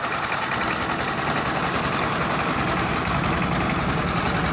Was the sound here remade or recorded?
recorded